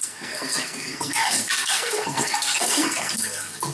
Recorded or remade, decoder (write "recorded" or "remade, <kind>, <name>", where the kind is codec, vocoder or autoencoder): remade, codec, SNAC